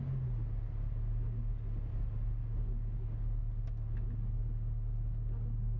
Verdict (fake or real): real